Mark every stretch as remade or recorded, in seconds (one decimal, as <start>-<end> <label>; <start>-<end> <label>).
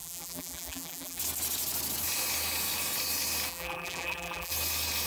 0.0-1.2 remade; 1.2-3.5 recorded; 3.5-4.5 remade; 4.5-5.1 recorded